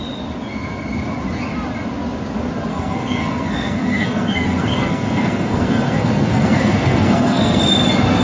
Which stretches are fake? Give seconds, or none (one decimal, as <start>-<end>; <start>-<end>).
2.7-7.6